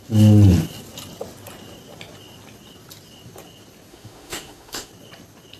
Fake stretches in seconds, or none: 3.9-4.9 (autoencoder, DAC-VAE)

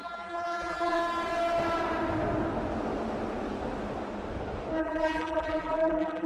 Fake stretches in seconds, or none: 0.0-1.0 (vocoder, BigVGAN v2); 4.8-6.3

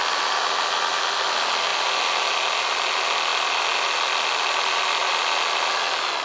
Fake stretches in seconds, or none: none